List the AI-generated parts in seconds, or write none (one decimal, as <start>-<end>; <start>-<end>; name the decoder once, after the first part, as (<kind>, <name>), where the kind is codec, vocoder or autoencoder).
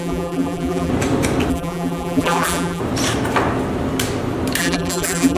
0.0-0.9 (vocoder, BigVGAN v2); 1.5-2.8; 4.6-5.4